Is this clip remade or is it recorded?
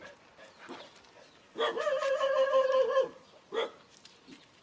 recorded